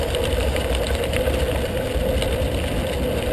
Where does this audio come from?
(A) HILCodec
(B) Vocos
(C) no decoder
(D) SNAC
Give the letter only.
C